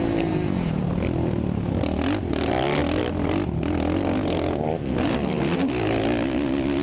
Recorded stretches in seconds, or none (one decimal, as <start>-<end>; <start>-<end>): 0.0-6.8